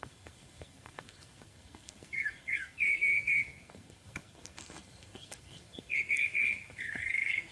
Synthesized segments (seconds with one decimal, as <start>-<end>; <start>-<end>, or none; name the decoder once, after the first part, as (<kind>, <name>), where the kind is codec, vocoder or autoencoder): 0.0-7.5 (codec, SNAC)